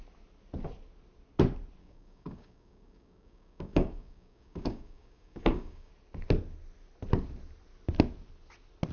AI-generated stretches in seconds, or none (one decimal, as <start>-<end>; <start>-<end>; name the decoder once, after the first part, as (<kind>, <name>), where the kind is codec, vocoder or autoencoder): 1.8-5.9 (codec, DAC)